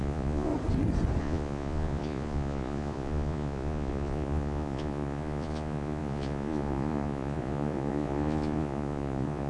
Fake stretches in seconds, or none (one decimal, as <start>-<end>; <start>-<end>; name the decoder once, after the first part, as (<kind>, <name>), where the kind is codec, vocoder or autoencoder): 0.0-0.5 (vocoder, Vocos); 1.2-9.5